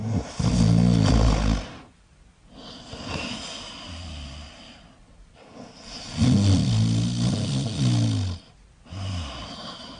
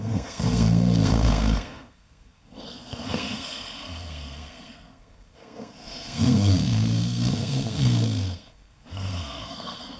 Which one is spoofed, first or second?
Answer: second